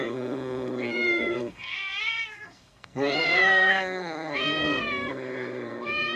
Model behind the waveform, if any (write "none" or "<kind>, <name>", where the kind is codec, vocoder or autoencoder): codec, SNAC